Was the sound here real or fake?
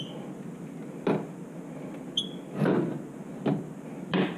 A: real